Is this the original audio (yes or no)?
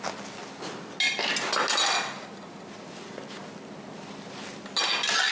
yes